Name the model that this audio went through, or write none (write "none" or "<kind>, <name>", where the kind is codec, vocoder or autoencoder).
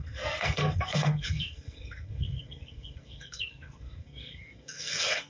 codec, SNAC